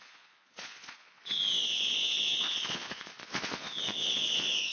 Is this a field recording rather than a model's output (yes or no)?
no